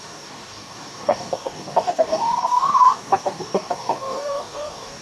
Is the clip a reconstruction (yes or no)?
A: yes